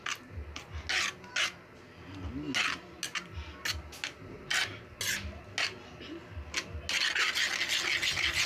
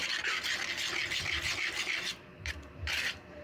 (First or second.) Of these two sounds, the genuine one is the first